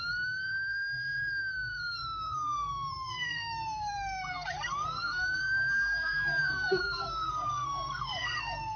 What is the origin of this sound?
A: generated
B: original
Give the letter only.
A